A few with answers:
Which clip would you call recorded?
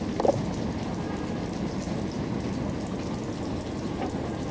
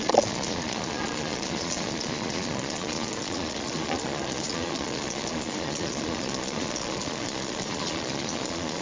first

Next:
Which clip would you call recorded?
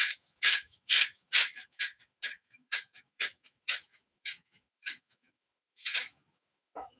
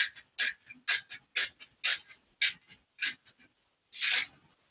second